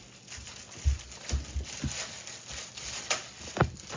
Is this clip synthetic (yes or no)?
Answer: no